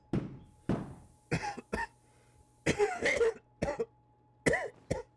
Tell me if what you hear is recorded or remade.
recorded